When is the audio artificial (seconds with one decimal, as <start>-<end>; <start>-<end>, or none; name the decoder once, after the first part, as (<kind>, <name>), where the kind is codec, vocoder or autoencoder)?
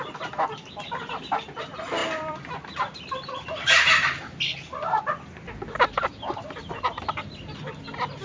2.0-5.0 (vocoder, BigVGAN v2); 6.0-7.1